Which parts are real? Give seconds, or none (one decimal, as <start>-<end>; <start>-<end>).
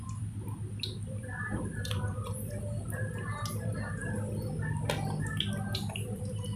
0.0-6.6